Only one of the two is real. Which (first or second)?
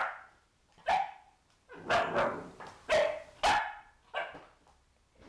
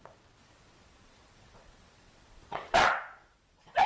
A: first